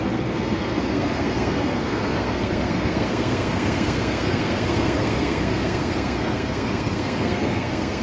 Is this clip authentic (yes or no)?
no